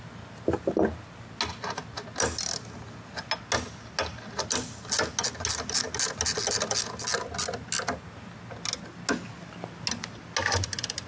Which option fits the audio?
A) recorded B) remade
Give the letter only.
A